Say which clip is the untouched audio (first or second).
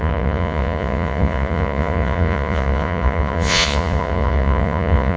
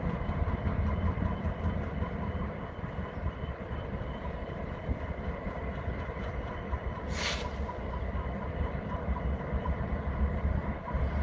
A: second